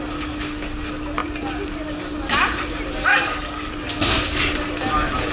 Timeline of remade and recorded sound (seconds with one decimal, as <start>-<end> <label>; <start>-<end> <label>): 0.0-3.1 recorded; 3.1-3.7 remade; 3.7-5.3 recorded